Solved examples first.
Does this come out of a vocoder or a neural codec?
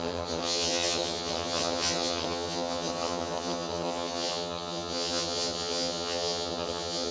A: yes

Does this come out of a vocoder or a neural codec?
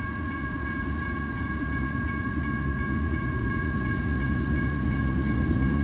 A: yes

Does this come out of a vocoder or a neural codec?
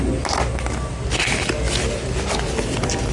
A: no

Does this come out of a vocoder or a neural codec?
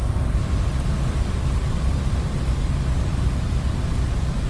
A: no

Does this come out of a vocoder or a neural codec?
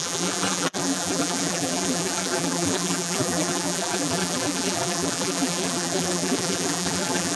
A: yes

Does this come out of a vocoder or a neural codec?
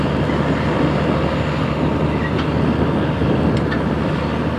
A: no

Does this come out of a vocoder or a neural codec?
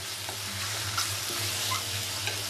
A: no